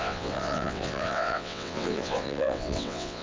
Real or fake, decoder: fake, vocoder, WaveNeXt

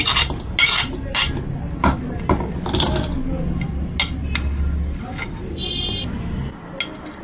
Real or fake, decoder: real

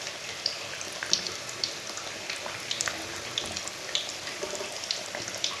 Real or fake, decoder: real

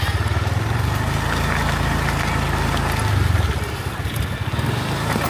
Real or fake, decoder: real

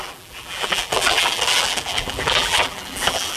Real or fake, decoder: fake, vocoder, BigVGAN v2